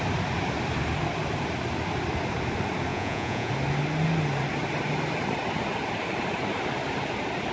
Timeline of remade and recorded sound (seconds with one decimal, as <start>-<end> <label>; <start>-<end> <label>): 0.0-2.9 recorded; 2.9-3.5 remade; 3.5-7.5 recorded